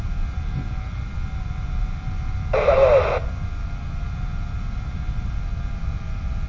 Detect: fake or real real